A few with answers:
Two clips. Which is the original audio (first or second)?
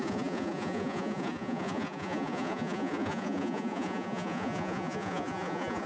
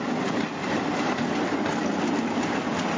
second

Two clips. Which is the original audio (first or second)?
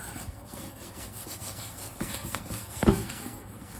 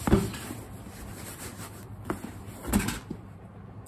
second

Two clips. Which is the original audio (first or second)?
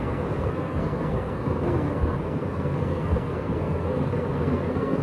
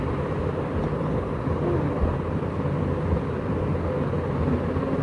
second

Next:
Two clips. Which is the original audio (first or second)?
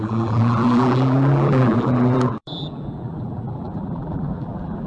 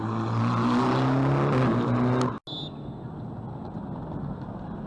second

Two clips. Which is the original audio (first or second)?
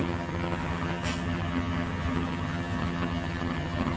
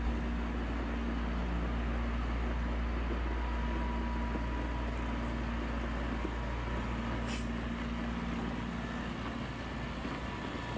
second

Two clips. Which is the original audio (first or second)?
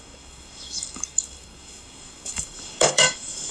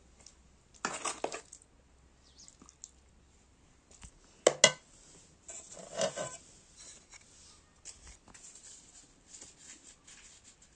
second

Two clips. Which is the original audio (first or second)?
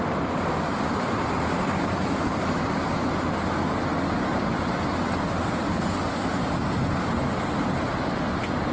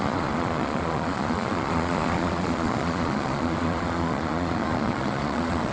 first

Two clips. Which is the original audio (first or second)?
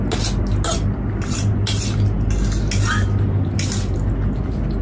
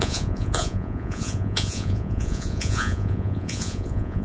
first